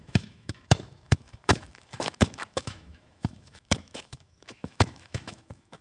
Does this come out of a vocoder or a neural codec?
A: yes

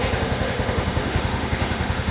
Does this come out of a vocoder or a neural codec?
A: yes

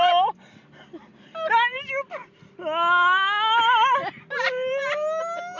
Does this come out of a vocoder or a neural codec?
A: no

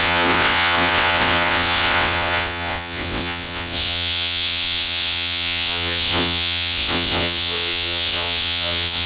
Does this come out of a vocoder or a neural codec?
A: yes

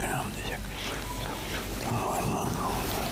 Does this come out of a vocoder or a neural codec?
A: no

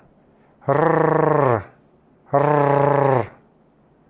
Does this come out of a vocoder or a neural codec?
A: no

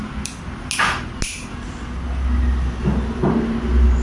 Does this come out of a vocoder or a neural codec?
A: no